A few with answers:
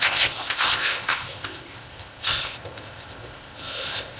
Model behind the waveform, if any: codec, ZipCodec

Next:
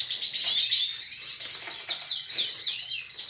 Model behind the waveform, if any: none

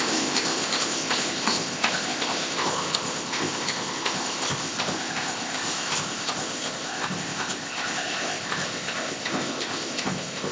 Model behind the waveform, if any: codec, ZipCodec